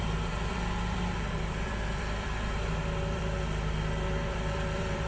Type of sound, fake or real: fake